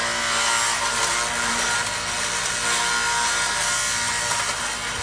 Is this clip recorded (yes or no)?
yes